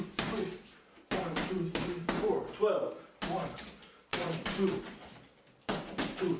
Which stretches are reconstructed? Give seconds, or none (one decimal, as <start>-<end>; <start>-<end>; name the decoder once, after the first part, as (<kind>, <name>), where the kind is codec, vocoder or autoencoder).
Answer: 1.4-2.1 (vocoder, BigVGAN v2); 4.1-4.8